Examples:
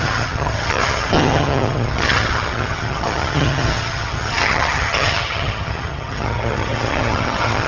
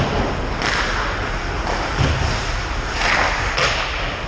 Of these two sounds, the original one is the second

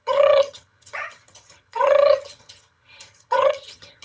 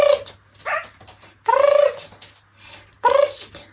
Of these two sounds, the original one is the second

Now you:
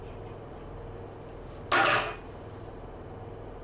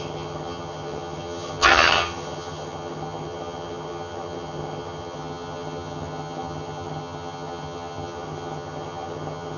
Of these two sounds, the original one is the first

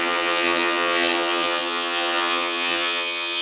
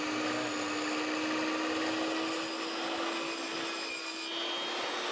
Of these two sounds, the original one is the second